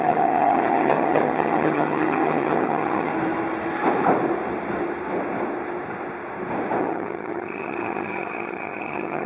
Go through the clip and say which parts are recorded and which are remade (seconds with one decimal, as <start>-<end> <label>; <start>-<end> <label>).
0.0-3.1 remade; 3.1-6.8 recorded; 6.8-9.3 remade